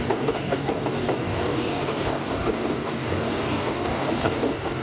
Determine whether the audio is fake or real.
fake